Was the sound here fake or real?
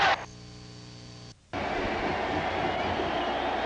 real